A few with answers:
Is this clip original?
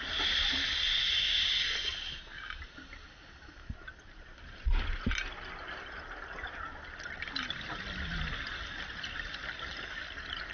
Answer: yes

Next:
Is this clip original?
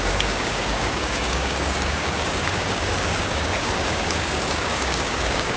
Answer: no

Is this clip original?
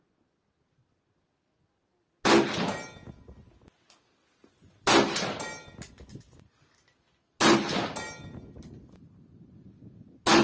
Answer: yes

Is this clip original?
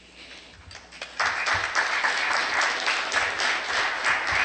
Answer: yes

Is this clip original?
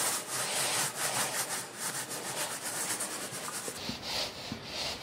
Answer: yes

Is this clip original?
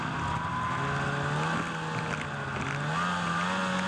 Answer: yes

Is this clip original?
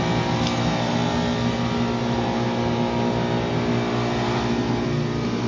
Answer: yes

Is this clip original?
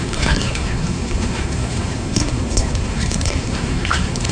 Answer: no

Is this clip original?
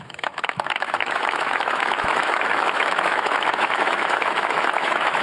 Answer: no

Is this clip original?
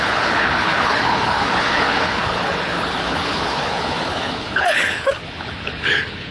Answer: no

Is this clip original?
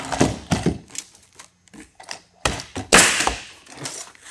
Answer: yes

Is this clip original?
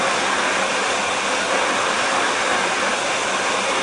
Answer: yes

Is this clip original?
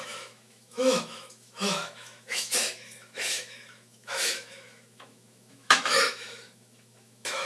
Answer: no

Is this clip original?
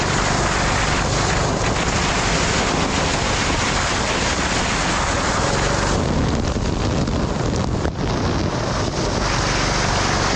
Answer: yes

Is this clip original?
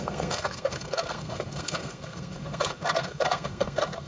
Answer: no